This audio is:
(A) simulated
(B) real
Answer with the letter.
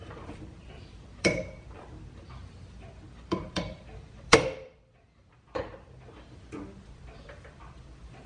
A